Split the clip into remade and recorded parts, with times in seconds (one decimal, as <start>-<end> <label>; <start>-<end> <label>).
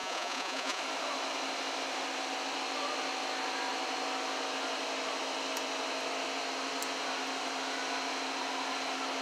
0.0-0.8 remade; 0.8-9.2 recorded